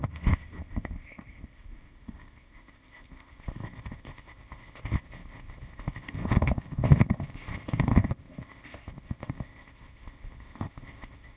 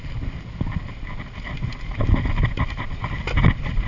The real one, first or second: second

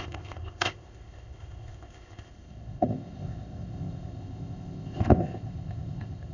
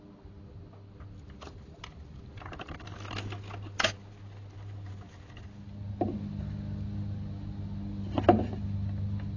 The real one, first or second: second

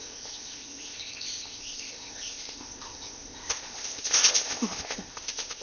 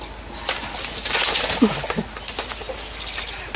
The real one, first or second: second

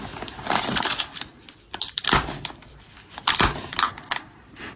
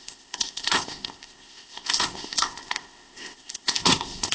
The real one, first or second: first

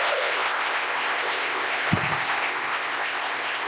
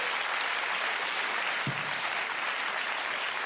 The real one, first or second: second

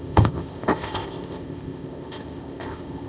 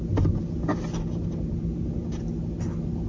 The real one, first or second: second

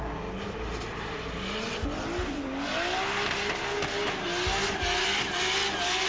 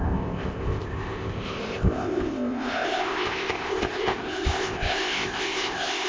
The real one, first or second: first